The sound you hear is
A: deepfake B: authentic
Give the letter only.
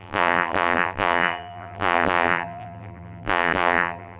A